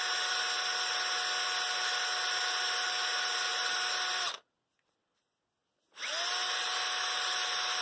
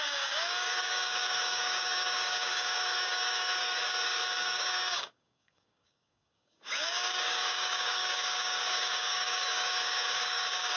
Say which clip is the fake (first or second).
second